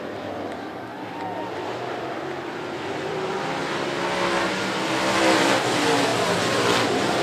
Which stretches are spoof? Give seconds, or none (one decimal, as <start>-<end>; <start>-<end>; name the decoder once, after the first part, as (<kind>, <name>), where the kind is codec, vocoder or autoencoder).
none

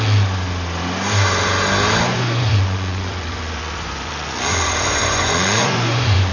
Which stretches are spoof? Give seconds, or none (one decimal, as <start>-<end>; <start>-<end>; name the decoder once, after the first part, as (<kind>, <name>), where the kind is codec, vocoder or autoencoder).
2.1-6.3 (vocoder, Vocos)

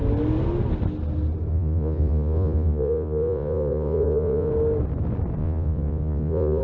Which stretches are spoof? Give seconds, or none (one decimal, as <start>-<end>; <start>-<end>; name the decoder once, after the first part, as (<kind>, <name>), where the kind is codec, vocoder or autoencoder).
1.5-4.5 (vocoder, Vocos); 5.4-6.6

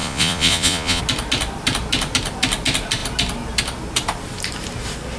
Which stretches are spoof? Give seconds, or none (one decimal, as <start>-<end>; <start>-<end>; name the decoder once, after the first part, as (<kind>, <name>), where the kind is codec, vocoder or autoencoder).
0.0-1.0 (vocoder, Vocos)

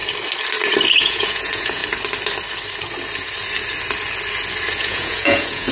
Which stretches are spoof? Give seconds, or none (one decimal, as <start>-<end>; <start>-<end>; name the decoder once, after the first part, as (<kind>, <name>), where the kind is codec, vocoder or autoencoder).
0.9-1.8 (vocoder, Vocos); 4.8-5.7